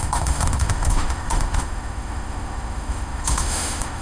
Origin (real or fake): fake